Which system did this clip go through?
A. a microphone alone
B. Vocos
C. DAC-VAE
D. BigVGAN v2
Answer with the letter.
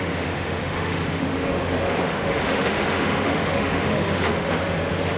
C